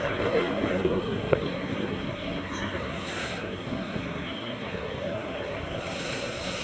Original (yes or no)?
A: no